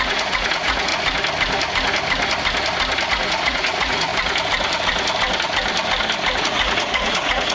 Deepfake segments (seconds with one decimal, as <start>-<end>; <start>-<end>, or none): 0.0-0.9; 3.1-4.1; 6.4-7.5